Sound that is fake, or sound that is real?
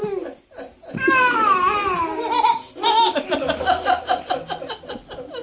real